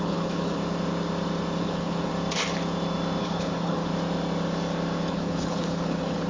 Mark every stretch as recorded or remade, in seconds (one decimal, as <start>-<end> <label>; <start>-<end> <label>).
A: 0.0-0.6 remade; 0.6-1.6 recorded; 1.6-2.1 remade; 2.1-3.2 recorded; 3.2-3.9 remade; 3.9-5.1 recorded; 5.1-6.3 remade

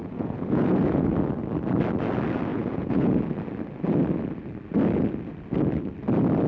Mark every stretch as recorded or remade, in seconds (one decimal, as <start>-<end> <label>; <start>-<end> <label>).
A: 0.0-1.1 remade; 1.1-2.5 recorded; 2.5-3.2 remade; 3.2-6.5 recorded

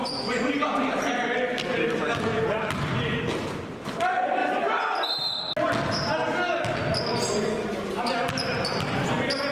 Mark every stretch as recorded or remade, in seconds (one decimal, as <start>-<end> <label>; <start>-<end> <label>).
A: 0.0-4.4 recorded; 4.4-5.5 remade; 5.5-9.5 recorded

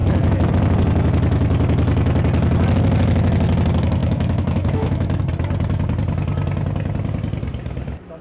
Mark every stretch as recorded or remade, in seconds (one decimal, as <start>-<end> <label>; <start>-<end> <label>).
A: 0.0-0.5 remade; 0.5-4.0 recorded; 4.0-5.2 remade; 5.2-8.2 recorded

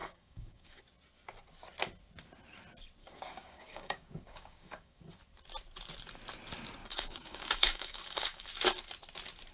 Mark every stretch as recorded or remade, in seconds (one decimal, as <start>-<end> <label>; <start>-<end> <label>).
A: 0.0-0.8 remade; 0.8-3.0 recorded; 3.0-5.0 remade; 5.0-6.8 recorded; 6.8-8.5 remade; 8.5-9.5 recorded

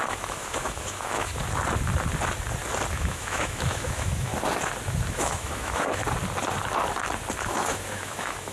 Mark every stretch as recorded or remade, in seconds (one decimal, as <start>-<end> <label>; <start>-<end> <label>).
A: 0.0-1.3 remade; 1.3-2.9 recorded; 2.9-4.3 remade; 4.3-5.1 recorded; 5.1-6.0 remade; 6.0-7.4 recorded; 7.4-8.5 remade